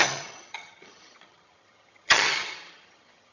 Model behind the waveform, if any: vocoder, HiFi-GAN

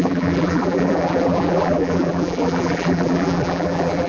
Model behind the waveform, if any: vocoder, BigVGAN v2